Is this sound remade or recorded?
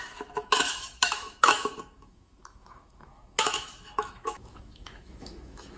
remade